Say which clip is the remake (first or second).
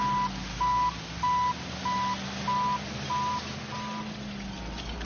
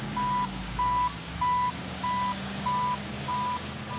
second